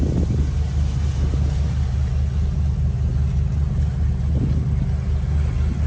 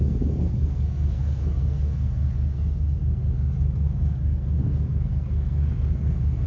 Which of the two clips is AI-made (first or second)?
second